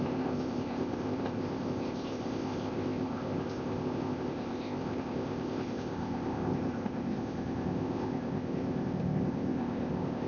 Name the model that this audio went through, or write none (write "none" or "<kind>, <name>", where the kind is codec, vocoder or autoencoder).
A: codec, ZipCodec